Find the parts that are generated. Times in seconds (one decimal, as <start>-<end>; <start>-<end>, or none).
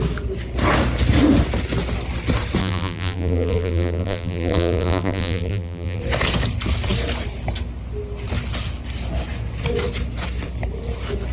2.6-6.0